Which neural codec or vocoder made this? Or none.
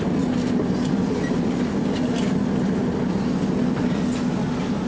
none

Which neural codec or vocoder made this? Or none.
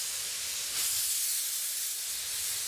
none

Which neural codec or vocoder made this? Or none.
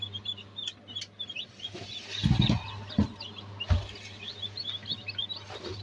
none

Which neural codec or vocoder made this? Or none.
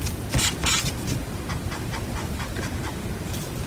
none